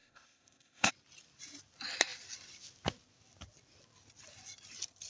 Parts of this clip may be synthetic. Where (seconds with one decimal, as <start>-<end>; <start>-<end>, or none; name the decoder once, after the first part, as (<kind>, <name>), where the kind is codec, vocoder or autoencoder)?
0.0-0.9 (codec, ZipCodec)